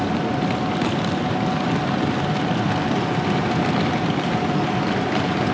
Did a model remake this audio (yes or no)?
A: no